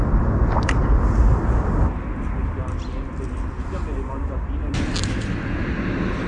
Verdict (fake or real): real